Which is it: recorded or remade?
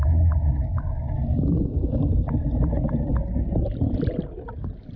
recorded